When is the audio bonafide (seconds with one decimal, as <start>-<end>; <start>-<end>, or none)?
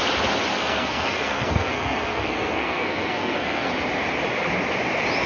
0.0-0.5; 3.7-5.3